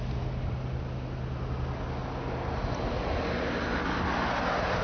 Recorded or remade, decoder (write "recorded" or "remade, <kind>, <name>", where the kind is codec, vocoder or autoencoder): recorded